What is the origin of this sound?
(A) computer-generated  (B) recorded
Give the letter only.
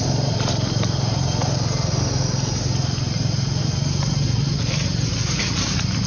B